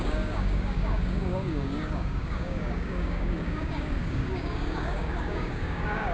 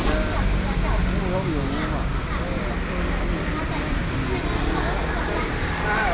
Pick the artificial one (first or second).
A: first